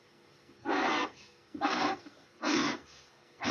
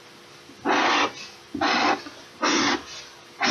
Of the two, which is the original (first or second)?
second